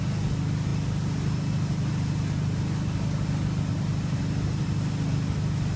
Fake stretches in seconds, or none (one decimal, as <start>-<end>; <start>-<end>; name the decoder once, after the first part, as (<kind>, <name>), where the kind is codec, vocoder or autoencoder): none